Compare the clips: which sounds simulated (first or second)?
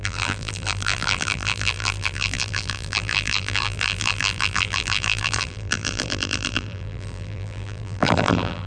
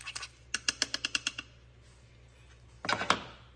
first